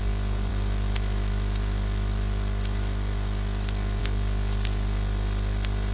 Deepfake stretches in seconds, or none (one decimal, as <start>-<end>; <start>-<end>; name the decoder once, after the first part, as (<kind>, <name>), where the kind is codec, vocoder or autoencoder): 0.5-4.0 (autoencoder, DAC-VAE)